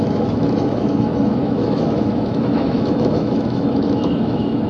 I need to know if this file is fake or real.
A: fake